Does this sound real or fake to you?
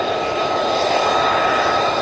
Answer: real